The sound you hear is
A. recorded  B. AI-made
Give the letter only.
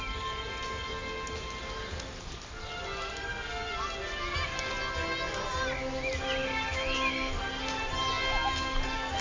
A